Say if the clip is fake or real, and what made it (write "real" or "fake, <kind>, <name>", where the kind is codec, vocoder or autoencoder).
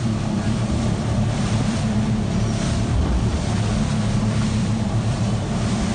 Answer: fake, vocoder, BigVGAN v2